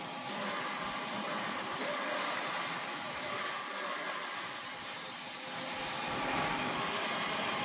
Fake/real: fake